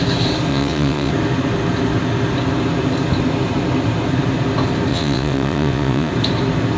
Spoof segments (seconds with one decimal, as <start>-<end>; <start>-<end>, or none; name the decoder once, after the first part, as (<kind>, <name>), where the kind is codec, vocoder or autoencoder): 0.5-1.1 (vocoder, WaveNeXt); 4.9-6.1